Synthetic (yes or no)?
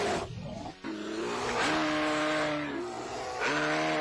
no